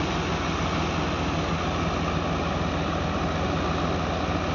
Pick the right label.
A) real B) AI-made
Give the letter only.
A